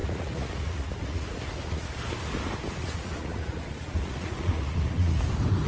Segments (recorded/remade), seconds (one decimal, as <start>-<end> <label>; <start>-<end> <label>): 0.0-2.0 remade; 2.0-2.8 recorded; 2.8-5.2 remade; 5.2-5.7 recorded